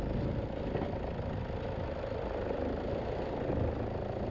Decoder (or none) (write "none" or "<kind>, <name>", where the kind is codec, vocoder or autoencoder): none